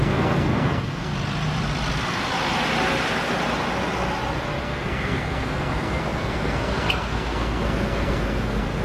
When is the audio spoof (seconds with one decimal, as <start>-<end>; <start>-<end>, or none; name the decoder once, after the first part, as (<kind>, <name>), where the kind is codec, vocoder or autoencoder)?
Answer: 0.0-1.1 (codec, SNAC); 4.6-8.8

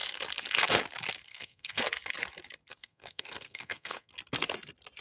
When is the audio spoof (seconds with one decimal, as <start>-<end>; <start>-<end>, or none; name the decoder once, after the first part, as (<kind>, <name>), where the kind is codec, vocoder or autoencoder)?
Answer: 1.3-1.8 (codec, SNAC); 2.8-4.1

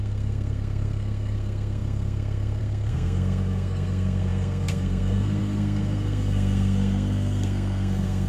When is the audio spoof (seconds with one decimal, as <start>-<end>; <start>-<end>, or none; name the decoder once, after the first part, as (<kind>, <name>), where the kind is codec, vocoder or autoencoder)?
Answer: 0.0-8.3 (codec, SNAC)

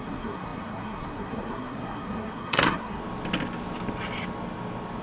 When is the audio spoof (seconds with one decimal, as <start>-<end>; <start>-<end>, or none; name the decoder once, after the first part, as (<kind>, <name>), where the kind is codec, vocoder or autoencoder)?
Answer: 0.0-3.0 (codec, SNAC)

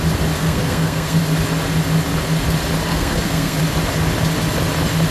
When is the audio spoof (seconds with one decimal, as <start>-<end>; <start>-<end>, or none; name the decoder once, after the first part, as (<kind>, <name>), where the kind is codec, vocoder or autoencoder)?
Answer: 0.4-1.2 (codec, SNAC); 2.9-3.6

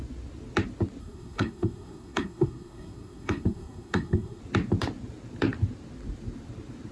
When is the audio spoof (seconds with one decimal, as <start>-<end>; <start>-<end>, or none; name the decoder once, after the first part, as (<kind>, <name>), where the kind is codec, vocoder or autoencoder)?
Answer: 1.0-4.4 (codec, SNAC)

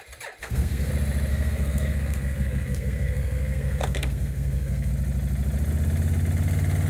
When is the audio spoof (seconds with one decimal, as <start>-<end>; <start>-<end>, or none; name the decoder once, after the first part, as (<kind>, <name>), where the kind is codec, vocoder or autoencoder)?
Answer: 0.4-0.9 (codec, SNAC); 1.3-4.9